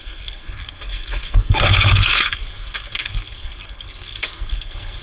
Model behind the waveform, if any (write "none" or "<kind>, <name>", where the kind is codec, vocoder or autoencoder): codec, SNAC